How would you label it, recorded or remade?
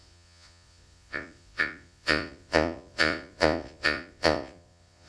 remade